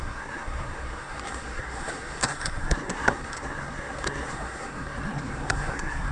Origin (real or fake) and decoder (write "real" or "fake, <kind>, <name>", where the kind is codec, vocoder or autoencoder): fake, codec, SNAC